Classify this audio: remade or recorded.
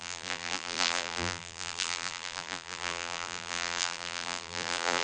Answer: remade